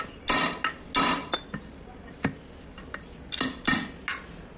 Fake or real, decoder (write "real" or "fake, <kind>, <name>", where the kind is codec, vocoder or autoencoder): real